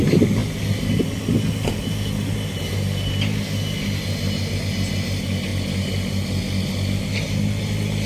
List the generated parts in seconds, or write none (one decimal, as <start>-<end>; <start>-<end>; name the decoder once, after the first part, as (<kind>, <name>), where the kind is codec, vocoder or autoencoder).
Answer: none